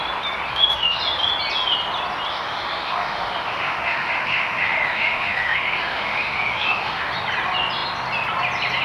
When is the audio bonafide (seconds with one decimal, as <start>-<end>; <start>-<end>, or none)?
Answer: 0.0-0.5; 1.0-2.3; 7.1-8.8